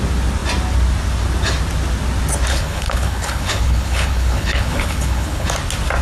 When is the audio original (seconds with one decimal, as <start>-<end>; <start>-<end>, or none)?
0.0-2.5; 5.5-6.0